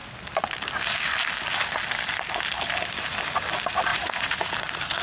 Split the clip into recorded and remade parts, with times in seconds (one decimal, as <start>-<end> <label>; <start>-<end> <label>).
0.0-3.9 recorded; 3.9-4.5 remade; 4.5-5.0 recorded